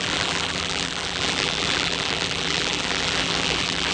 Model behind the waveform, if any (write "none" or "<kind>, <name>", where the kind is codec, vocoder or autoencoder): vocoder, BigVGAN v2